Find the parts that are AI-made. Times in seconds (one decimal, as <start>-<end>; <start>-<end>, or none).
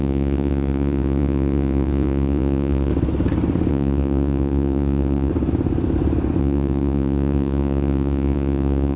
0.0-2.9; 3.7-5.3; 6.4-9.0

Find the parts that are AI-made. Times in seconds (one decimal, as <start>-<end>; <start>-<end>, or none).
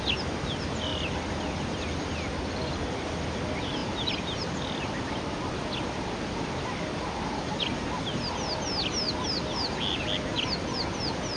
none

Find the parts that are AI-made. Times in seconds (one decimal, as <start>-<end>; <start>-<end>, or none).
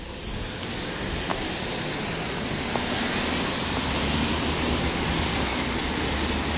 none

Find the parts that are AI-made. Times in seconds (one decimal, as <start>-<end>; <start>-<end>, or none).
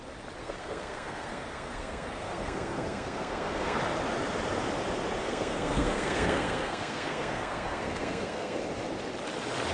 0.4-3.8; 5.2-8.6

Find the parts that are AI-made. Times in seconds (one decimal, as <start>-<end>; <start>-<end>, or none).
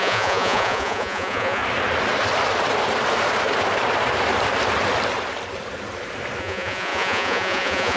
0.0-1.6; 6.4-8.0